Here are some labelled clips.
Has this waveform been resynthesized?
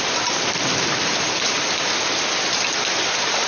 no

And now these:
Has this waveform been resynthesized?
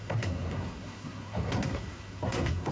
yes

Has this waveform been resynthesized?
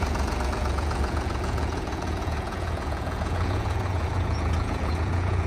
yes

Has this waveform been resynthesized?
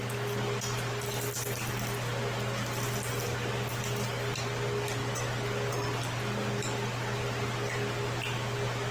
no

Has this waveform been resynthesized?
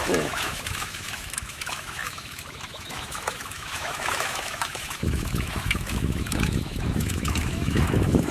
yes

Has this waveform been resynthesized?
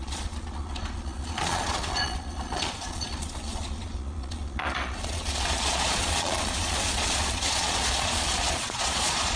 yes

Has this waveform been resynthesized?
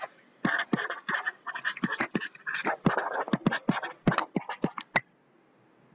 no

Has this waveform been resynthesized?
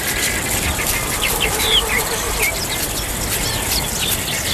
no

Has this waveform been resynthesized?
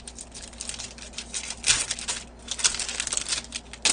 no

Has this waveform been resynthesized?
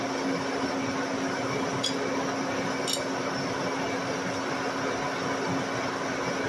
no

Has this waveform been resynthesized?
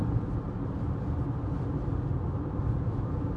no